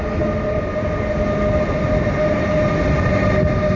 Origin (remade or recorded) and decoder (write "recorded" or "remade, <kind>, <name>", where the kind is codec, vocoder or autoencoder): recorded